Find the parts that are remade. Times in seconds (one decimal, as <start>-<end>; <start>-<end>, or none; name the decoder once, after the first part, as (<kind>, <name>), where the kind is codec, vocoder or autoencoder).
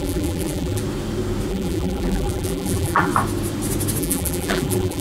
0.0-0.8 (vocoder, BigVGAN v2); 1.5-3.1; 4.0-5.0